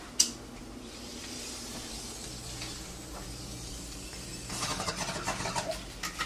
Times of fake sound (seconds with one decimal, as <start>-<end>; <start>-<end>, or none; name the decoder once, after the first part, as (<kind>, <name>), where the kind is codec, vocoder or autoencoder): 0.6-1.7 (vocoder, BigVGAN v2)